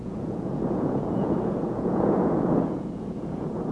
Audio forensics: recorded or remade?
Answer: remade